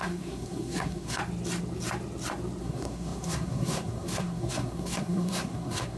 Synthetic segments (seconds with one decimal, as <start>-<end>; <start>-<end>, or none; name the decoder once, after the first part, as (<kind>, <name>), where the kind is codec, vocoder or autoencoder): 0.0-1.2 (codec, SNAC); 2.6-6.0